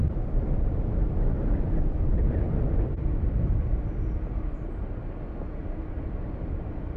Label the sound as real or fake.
real